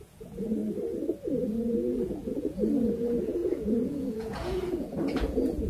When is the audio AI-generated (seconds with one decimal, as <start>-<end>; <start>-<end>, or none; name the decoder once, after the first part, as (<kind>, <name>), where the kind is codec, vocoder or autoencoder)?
0.0-0.6 (vocoder, Vocos); 1.2-5.7